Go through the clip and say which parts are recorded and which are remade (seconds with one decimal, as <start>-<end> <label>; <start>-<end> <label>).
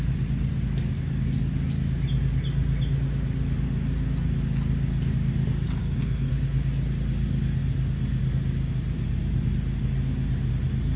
0.0-5.8 recorded; 5.8-6.3 remade; 6.3-11.0 recorded